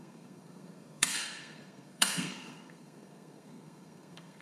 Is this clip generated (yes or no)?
yes